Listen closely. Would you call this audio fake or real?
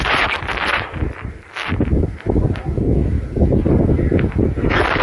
real